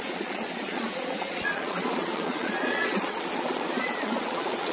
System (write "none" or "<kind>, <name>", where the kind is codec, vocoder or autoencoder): vocoder, Vocos